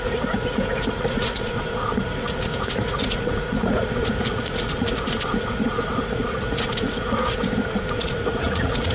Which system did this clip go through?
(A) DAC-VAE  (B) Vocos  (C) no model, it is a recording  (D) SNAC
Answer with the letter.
B